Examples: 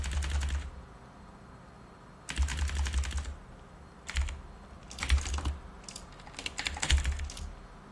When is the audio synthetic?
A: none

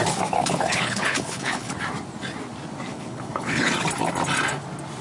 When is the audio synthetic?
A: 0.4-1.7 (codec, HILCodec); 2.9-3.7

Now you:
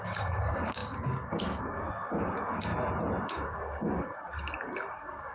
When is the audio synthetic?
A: 0.0-2.7 (codec, DAC); 3.2-5.3